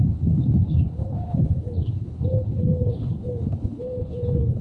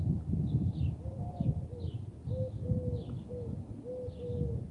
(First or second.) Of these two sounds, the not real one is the first